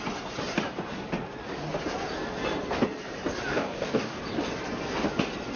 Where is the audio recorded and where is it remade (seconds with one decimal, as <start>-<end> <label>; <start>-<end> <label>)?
0.0-3.5 recorded; 3.5-4.2 remade; 4.2-5.6 recorded